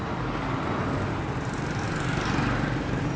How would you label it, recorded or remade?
recorded